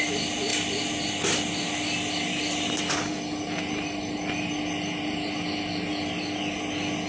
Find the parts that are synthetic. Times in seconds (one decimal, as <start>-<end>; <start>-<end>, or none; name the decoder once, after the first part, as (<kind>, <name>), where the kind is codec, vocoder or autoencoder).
none